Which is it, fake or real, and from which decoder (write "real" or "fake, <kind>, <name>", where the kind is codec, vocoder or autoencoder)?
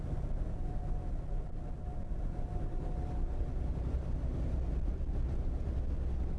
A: real